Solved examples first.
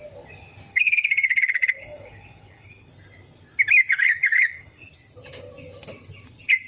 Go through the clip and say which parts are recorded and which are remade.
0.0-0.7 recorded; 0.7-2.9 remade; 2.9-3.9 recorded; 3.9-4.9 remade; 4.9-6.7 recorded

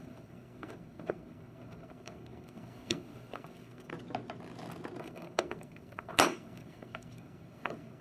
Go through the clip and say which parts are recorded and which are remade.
0.0-3.9 remade; 3.9-5.0 recorded; 5.0-8.0 remade

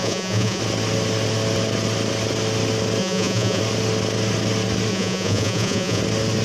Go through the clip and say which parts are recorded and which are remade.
0.0-0.6 remade; 0.6-3.0 recorded; 3.0-3.6 remade; 3.6-4.9 recorded; 4.9-6.0 remade; 6.0-6.4 recorded

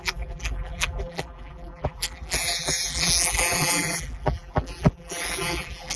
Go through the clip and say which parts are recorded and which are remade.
0.0-6.0 remade

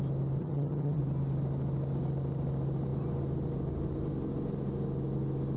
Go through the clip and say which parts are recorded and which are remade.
0.0-0.4 recorded; 0.4-1.0 remade; 1.0-5.6 recorded

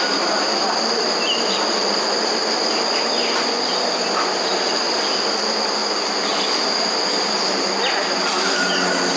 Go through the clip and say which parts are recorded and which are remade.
0.0-9.2 recorded